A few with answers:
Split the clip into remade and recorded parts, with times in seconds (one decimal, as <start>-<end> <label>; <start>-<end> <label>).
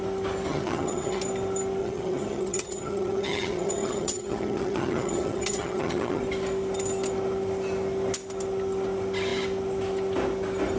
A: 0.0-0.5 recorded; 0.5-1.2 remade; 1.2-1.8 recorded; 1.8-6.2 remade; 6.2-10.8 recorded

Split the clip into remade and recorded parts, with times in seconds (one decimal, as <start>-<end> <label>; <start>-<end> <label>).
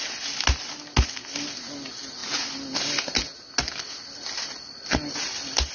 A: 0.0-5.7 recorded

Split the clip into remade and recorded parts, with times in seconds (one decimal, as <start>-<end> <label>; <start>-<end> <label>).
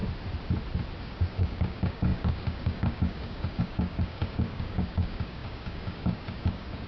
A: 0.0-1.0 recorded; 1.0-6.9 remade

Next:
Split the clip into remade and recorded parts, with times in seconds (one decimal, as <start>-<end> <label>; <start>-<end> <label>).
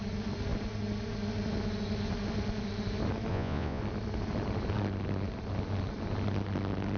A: 0.0-3.3 recorded; 3.3-3.8 remade; 3.8-7.0 recorded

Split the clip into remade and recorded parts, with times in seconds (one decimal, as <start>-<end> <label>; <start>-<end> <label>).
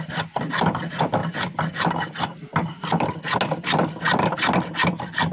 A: 0.0-5.3 recorded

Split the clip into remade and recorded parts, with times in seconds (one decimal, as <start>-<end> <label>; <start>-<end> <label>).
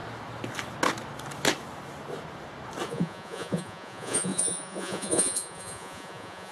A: 0.0-2.9 recorded; 2.9-6.5 remade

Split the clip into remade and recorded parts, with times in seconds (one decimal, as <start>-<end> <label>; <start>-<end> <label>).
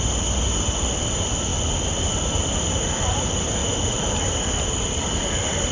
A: 0.0-5.7 recorded